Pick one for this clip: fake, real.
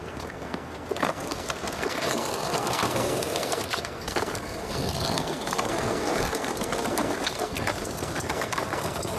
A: fake